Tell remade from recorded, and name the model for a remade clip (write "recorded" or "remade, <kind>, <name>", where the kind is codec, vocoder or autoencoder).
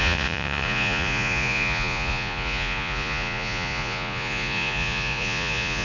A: remade, vocoder, Vocos